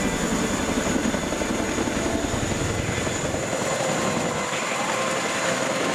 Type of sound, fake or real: real